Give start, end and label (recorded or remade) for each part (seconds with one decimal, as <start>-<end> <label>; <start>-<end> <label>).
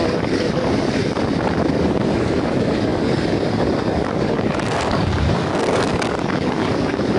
0.0-1.0 remade; 1.0-1.7 recorded; 1.7-7.2 remade